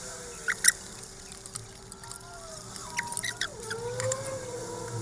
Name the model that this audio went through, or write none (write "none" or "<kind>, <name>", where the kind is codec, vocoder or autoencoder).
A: none